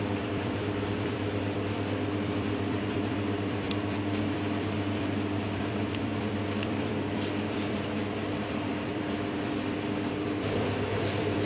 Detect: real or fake fake